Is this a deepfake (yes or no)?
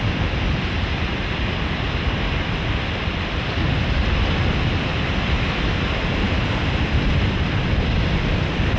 no